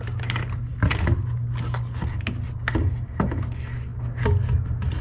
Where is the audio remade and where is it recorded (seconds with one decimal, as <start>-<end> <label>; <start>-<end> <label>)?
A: 0.0-5.0 recorded